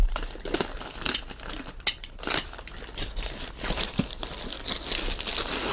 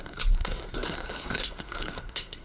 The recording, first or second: first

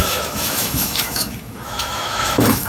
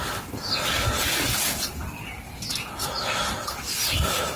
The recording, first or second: second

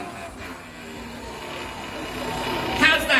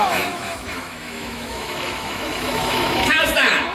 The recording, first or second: first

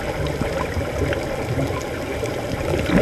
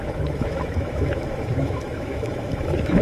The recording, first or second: first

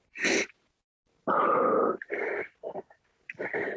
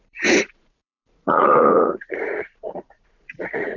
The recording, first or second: first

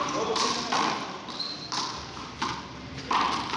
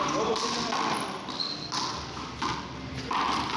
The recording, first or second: second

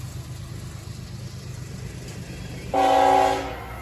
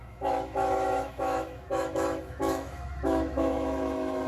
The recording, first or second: first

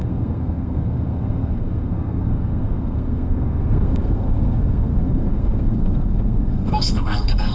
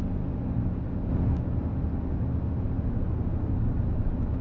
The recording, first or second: second